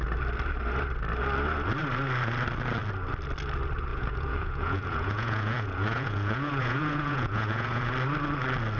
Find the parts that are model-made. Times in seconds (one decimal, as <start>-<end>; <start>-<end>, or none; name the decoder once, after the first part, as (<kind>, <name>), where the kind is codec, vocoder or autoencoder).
3.9-7.9 (vocoder, Vocos)